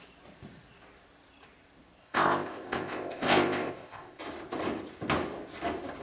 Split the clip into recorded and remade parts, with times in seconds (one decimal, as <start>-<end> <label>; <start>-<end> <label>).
0.0-2.0 recorded; 2.0-4.2 remade; 4.2-6.0 recorded